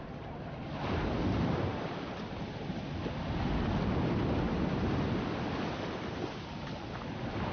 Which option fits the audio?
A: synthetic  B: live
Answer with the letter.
B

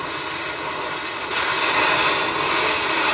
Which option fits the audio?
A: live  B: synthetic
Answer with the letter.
A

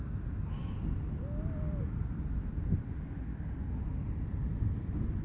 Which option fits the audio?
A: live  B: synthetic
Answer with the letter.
A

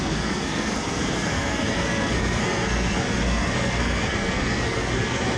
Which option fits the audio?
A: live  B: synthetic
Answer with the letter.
B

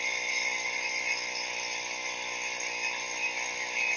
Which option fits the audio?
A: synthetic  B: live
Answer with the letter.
B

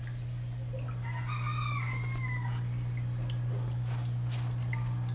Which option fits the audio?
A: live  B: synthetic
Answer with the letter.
A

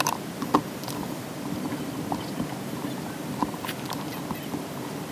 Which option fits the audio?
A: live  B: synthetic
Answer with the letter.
A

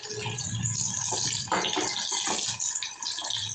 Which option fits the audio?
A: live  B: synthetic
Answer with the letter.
A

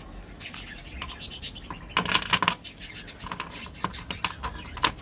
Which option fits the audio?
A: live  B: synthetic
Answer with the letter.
A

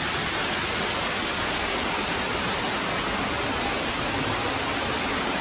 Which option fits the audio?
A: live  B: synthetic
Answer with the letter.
A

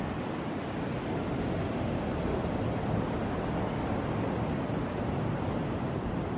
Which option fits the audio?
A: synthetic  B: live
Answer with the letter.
B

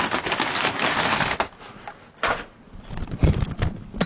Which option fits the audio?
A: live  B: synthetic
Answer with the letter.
A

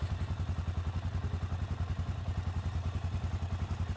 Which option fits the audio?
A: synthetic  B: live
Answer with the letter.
B